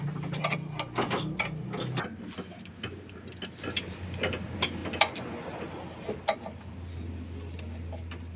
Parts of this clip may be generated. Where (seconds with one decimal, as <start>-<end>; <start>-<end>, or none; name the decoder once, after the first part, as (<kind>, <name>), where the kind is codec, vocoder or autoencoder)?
none